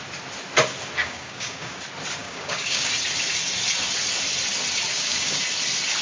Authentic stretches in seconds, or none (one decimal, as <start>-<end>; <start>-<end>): 0.0-1.0; 1.8-2.2; 2.9-4.9; 5.4-6.0